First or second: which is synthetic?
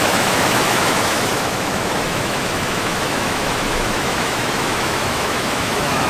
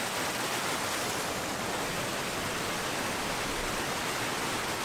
first